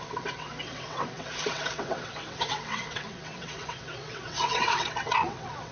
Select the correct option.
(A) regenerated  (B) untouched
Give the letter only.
A